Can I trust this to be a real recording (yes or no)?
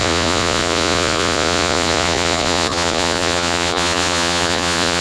no